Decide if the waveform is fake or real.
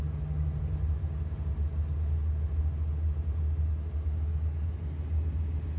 real